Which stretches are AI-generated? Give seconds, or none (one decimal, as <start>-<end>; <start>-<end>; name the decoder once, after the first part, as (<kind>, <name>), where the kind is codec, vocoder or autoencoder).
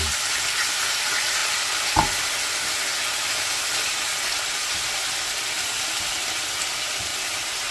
none